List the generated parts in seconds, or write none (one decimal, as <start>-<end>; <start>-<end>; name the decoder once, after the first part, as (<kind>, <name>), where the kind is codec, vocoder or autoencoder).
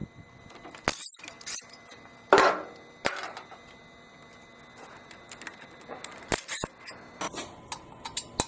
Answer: none